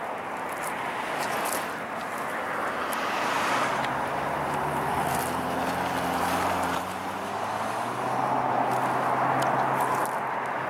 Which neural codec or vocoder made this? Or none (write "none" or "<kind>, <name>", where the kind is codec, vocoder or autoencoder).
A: none